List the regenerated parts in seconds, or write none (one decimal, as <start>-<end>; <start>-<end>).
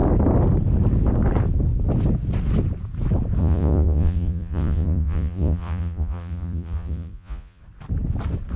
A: 3.4-7.6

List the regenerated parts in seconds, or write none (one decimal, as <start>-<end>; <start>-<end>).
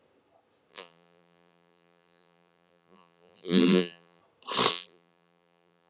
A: 0.7-4.2; 4.7-5.9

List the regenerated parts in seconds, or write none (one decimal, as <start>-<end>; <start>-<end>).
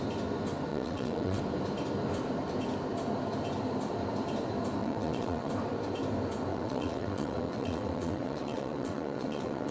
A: 0.7-1.4; 4.8-5.5; 6.5-9.7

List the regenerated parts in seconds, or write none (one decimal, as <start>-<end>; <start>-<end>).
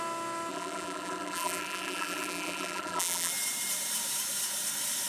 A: 0.5-3.3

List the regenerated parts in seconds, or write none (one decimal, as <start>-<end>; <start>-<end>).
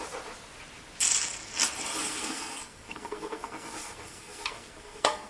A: 2.0-5.3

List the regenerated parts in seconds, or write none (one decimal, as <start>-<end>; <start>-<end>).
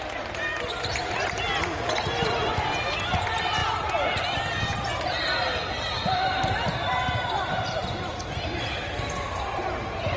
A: none